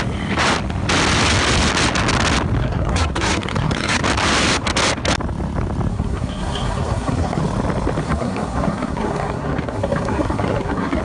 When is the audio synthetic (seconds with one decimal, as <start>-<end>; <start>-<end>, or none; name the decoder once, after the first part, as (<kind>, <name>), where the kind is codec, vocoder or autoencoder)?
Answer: 2.6-4.0 (codec, SNAC); 5.9-7.4; 8.0-11.0